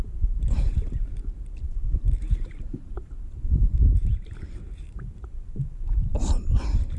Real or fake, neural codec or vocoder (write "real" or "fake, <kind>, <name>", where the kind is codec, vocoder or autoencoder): fake, vocoder, BigVGAN v2